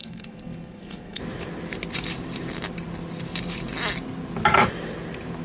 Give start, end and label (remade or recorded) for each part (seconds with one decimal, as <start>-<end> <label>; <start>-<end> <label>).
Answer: 0.0-1.2 remade; 1.2-5.4 recorded